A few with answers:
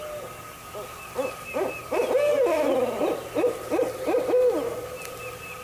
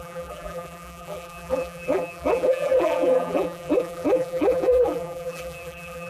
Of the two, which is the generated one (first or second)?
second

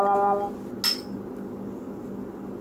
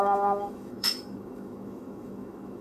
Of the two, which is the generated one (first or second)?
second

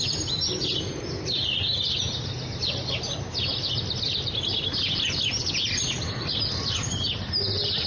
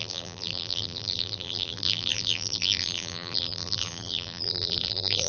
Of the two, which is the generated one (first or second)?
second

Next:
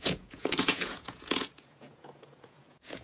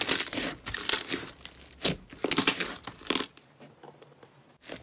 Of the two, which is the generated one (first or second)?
first